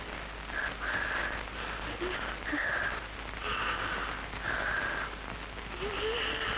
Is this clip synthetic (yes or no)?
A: no